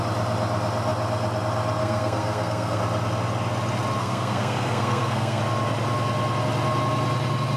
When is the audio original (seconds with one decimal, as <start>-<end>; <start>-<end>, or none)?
0.0-1.8; 2.8-4.0; 5.4-7.6